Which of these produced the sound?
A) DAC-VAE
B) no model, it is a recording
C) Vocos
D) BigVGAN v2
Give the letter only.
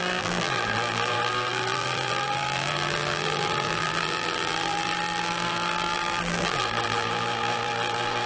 D